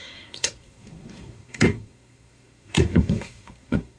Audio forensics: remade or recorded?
remade